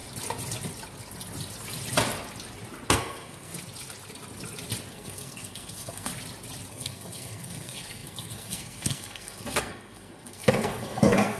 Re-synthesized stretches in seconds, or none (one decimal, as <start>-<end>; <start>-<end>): 2.9-3.5; 4.9-6.1; 6.7-11.4

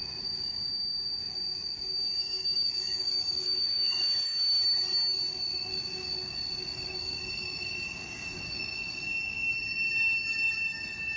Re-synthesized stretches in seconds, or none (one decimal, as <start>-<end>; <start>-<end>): 2.2-4.0; 5.7-9.5

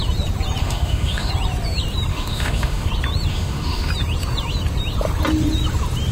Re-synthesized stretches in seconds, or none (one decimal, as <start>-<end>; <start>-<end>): 0.6-1.3; 2.1-2.9; 3.3-3.9

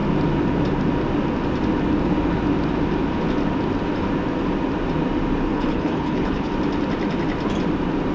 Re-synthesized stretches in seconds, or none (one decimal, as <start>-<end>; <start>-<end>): 5.5-6.5

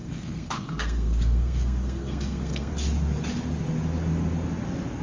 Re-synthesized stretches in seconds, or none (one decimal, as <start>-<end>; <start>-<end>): 0.0-2.7

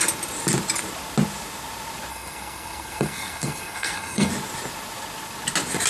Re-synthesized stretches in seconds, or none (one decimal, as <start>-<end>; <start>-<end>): 2.1-4.3

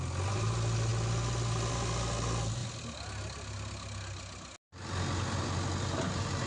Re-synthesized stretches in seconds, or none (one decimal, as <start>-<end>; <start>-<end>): none